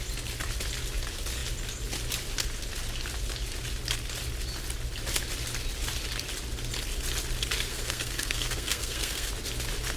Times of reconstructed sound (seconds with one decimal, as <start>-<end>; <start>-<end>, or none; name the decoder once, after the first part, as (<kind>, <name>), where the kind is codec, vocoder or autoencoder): 7.7-9.3 (codec, SNAC)

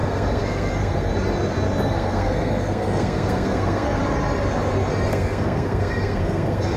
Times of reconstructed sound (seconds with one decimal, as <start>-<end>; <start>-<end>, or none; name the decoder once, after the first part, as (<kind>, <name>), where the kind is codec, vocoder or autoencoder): 0.0-1.1 (codec, SNAC); 1.8-4.0; 5.1-6.8

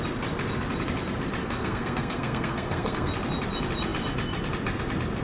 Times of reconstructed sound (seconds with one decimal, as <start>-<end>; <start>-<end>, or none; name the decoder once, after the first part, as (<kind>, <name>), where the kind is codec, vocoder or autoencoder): 1.4-3.1 (codec, SNAC)

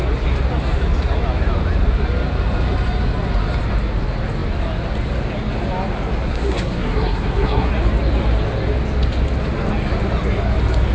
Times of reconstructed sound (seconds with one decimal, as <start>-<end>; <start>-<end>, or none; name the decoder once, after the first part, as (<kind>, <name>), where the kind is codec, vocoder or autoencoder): 6.3-7.7 (codec, SNAC)

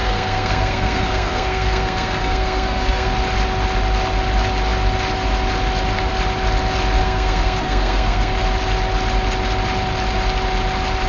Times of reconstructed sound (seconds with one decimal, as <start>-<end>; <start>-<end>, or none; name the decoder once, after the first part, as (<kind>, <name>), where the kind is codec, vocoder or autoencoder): 0.0-3.1 (codec, SNAC); 7.0-8.3